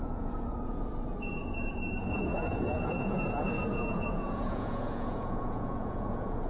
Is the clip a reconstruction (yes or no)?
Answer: yes